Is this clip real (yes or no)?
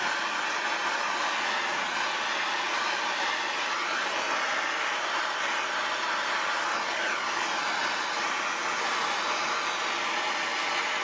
yes